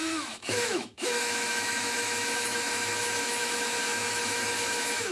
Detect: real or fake fake